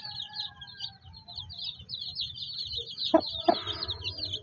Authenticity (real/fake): real